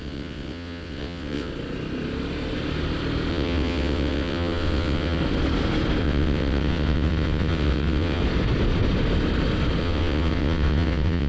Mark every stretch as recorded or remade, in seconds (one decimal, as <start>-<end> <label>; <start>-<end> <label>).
0.0-1.5 remade; 1.5-3.3 recorded; 3.3-5.2 remade; 5.2-6.0 recorded; 6.0-8.2 remade; 8.2-9.8 recorded; 9.8-11.3 remade